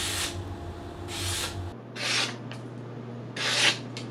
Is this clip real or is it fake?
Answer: real